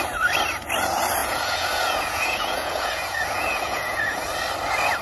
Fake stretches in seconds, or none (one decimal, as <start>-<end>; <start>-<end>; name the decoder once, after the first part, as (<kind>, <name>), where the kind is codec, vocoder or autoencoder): 1.2-4.2 (vocoder, Vocos)